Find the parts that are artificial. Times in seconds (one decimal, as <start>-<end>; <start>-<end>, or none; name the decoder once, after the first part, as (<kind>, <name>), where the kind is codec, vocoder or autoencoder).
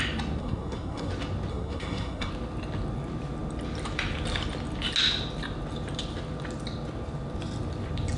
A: 0.4-1.1 (codec, SNAC); 1.5-2.3